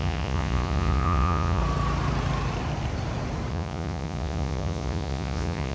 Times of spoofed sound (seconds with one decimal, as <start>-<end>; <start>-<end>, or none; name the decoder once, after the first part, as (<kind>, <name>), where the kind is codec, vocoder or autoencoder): 0.0-1.6 (vocoder, Vocos); 3.5-5.7